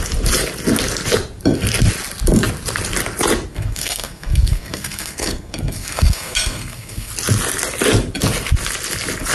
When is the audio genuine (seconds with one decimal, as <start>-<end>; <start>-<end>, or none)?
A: 0.0-3.5; 7.1-9.3